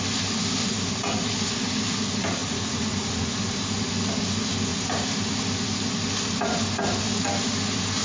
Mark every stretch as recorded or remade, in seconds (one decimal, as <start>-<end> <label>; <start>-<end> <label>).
0.0-2.4 recorded; 2.4-3.3 remade; 3.3-8.0 recorded

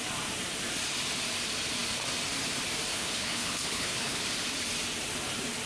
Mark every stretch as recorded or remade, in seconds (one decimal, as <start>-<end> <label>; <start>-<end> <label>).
0.0-2.9 recorded; 2.9-4.2 remade; 4.2-5.7 recorded

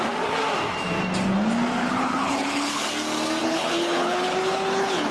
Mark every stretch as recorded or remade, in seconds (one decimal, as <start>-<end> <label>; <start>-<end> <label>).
0.0-1.8 recorded; 1.8-2.9 remade; 2.9-3.4 recorded; 3.4-5.1 remade

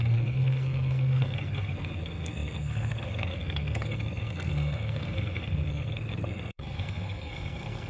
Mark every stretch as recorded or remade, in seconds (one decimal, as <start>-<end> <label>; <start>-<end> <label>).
0.0-7.9 remade

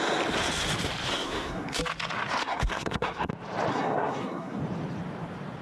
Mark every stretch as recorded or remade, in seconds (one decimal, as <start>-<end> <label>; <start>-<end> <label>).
0.0-1.1 recorded; 1.1-1.8 remade; 1.8-2.4 recorded; 2.4-3.3 remade; 3.3-3.7 recorded; 3.7-4.6 remade; 4.6-5.6 recorded